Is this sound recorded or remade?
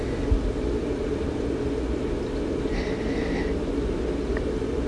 recorded